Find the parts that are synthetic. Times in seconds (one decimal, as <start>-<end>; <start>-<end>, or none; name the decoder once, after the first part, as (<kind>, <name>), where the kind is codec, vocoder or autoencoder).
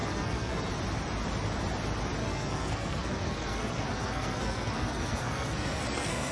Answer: 0.0-0.7 (codec, SNAC); 2.2-6.3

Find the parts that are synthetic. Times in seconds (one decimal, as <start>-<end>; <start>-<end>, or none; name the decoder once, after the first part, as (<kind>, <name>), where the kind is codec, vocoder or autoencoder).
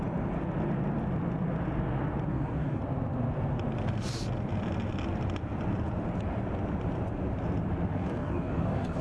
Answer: 2.3-2.8 (codec, DAC); 7.9-9.0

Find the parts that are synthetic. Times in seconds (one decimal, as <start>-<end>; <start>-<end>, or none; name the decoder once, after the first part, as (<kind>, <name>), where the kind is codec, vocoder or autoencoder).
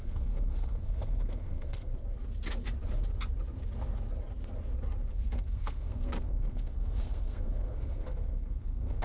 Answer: 0.0-1.9 (codec, SNAC); 5.1-9.0